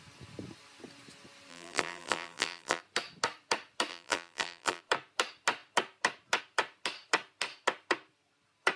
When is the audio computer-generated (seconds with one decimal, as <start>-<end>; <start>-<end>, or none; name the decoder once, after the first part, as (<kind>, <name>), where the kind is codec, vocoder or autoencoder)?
1.5-2.8 (vocoder, BigVGAN v2); 3.9-4.8